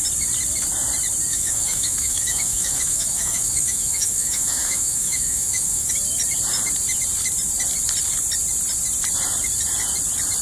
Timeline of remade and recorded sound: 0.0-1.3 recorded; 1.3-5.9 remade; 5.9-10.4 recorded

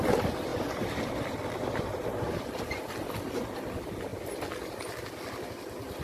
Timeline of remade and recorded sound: 0.0-0.5 recorded; 0.5-2.6 remade; 2.6-6.0 recorded

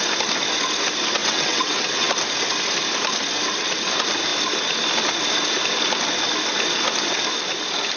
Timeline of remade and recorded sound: 0.0-1.2 recorded; 1.2-2.1 remade; 2.1-8.0 recorded

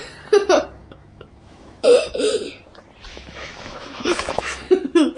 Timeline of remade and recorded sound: 0.0-0.8 recorded; 0.8-2.3 remade; 2.3-3.1 recorded; 3.1-4.7 remade; 4.7-5.2 recorded

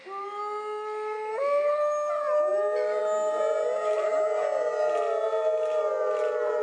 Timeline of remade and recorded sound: 0.0-6.6 recorded